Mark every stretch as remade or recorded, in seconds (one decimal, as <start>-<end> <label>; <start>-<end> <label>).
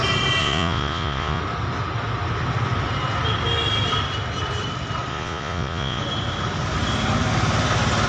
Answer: 0.0-0.4 recorded; 0.4-1.4 remade; 1.4-5.1 recorded; 5.1-6.0 remade; 6.0-8.1 recorded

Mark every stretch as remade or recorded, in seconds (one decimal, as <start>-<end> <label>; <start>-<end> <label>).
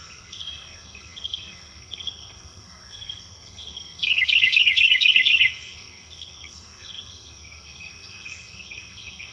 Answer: 0.0-9.3 remade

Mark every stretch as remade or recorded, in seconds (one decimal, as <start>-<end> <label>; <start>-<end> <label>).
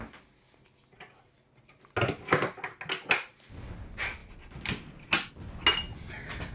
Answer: 0.0-6.5 recorded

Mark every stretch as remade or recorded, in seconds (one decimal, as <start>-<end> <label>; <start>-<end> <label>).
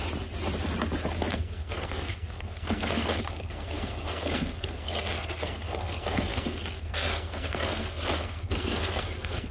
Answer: 0.0-1.3 recorded; 1.3-9.5 remade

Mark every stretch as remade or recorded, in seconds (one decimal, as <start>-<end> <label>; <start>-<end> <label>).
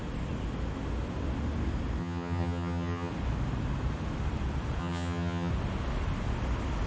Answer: 0.0-2.0 recorded; 2.0-3.1 remade; 3.1-4.8 recorded; 4.8-5.5 remade; 5.5-6.9 recorded